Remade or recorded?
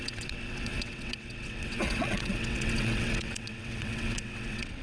remade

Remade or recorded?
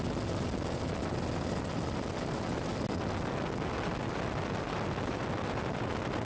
recorded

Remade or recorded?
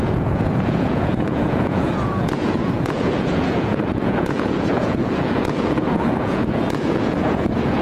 remade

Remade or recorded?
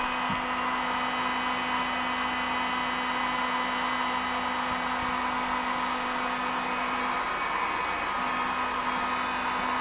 recorded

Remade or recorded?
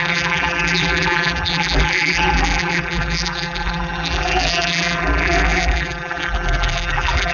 remade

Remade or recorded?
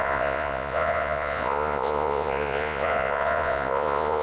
remade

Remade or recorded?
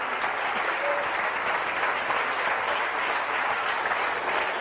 recorded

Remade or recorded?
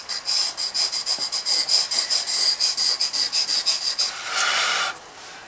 recorded